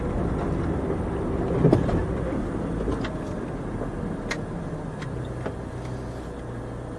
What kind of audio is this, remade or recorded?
recorded